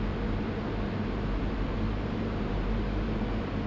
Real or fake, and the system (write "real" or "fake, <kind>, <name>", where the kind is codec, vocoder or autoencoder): fake, vocoder, BigVGAN v2